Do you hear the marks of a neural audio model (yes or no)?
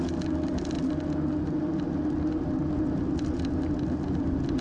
no